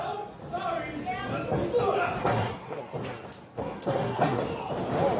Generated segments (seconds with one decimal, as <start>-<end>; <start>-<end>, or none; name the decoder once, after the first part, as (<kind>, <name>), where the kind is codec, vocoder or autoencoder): 2.2-2.8 (codec, SNAC); 3.6-4.4

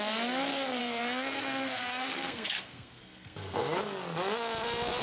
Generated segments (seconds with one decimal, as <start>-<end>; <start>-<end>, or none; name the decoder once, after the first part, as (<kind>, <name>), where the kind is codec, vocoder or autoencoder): 0.8-3.8 (codec, SNAC)

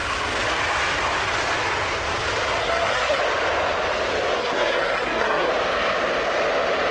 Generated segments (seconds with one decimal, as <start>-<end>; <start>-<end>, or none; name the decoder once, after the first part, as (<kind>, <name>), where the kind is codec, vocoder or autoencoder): 2.6-3.2 (codec, SNAC); 4.4-5.5